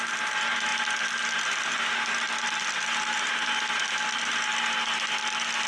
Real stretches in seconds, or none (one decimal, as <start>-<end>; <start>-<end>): 0.0-5.7

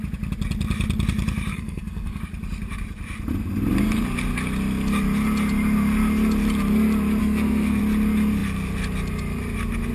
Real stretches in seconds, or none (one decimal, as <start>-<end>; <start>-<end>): 0.0-1.5; 2.2-7.2; 7.8-9.9

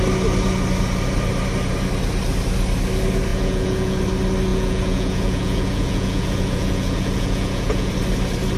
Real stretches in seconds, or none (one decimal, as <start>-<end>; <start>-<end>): 0.0-3.3; 4.0-4.5; 7.9-8.6

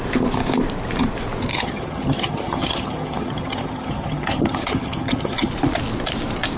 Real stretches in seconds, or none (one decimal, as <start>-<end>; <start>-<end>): 0.0-1.5; 5.5-6.6

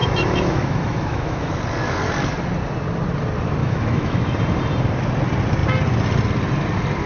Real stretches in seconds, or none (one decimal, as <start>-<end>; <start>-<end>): 1.5-3.6; 4.4-7.1